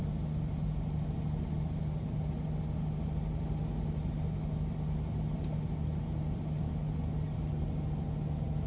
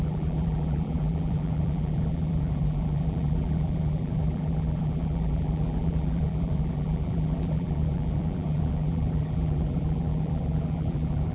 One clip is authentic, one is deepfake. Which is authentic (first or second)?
first